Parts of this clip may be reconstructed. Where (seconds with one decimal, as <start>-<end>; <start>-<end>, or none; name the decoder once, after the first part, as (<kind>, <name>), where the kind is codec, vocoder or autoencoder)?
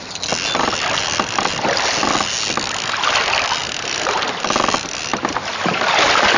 none